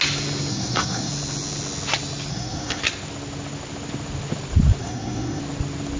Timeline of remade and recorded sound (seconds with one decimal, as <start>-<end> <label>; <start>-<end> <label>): 0.0-0.5 recorded; 0.5-1.1 remade; 1.1-2.3 recorded; 2.3-2.8 remade; 2.8-4.8 recorded; 4.8-5.4 remade; 5.4-6.0 recorded